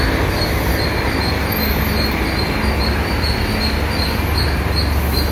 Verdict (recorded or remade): recorded